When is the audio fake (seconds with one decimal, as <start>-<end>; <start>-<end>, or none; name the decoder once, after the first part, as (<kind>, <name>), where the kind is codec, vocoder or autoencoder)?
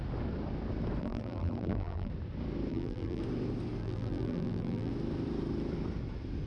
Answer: 1.0-2.1 (vocoder, BigVGAN v2); 2.7-3.2; 3.8-4.9